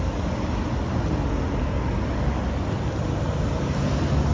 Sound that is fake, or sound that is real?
real